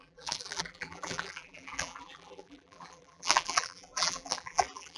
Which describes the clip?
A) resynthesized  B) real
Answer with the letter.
A